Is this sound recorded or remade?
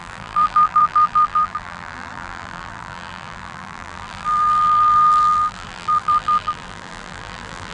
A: remade